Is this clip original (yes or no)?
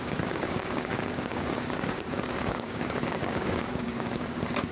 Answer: no